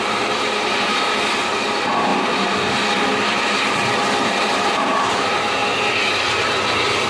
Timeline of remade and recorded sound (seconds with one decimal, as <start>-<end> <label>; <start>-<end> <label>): 0.0-2.1 remade; 2.1-4.7 recorded; 4.7-5.6 remade; 5.6-6.3 recorded; 6.3-7.1 remade